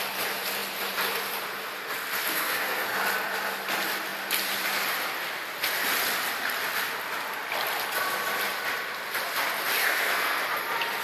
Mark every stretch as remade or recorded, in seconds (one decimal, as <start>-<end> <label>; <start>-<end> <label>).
0.0-2.3 recorded; 2.3-3.0 remade; 3.0-9.8 recorded; 9.8-10.4 remade; 10.4-11.0 recorded